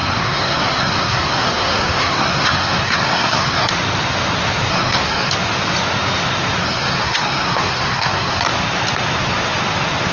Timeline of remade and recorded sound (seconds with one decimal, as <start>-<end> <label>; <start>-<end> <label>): 0.0-3.7 remade; 3.7-4.7 recorded; 4.7-5.3 remade; 5.3-6.6 recorded; 6.6-8.4 remade; 8.4-10.1 recorded

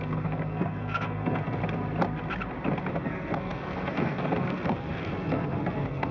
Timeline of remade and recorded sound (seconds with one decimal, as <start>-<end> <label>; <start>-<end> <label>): 0.0-1.6 remade; 1.6-2.9 recorded; 2.9-6.1 remade

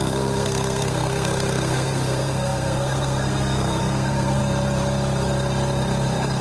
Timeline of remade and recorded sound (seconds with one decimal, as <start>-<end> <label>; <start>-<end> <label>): 0.0-4.4 remade; 4.4-6.4 recorded

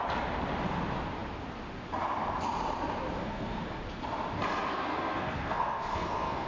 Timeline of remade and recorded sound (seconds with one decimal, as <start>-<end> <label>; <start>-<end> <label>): 0.0-3.2 recorded; 3.2-3.8 remade; 3.8-4.7 recorded; 4.7-6.5 remade

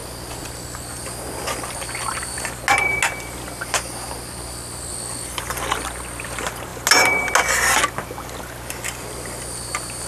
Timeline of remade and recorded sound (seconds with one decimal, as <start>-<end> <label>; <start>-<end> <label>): 0.0-10.1 recorded

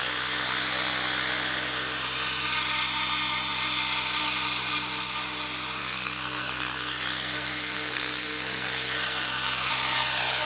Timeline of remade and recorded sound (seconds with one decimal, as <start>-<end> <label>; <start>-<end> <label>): 0.0-5.8 recorded; 5.8-9.7 remade; 9.7-10.4 recorded

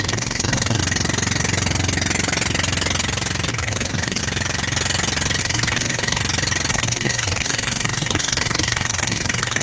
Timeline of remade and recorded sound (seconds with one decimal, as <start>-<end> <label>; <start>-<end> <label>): 0.0-0.8 remade; 0.8-3.5 recorded; 3.5-4.2 remade; 4.2-5.4 recorded; 5.4-6.2 remade; 6.2-6.7 recorded; 6.7-9.6 remade

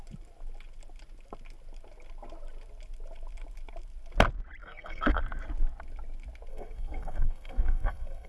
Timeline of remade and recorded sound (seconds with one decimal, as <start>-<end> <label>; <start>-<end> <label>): 0.0-4.6 recorded; 4.6-5.2 remade; 5.2-6.5 recorded; 6.5-8.3 remade